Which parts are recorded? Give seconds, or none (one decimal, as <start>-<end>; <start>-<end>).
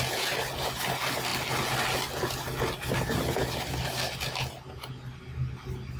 0.0-6.0